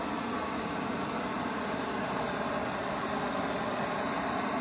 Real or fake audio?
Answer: real